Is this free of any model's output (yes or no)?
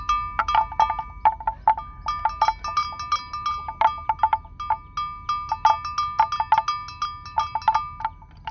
yes